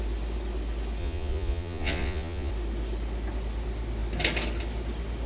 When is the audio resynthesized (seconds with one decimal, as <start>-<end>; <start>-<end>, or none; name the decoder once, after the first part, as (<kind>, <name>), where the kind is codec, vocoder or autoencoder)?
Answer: 1.0-2.5 (vocoder, Vocos)